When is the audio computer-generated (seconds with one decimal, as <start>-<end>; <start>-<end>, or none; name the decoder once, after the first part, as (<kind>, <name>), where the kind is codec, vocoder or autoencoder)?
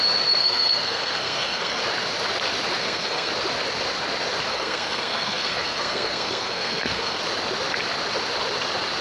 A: 0.4-1.8 (codec, SNAC); 2.8-3.3; 4.5-7.2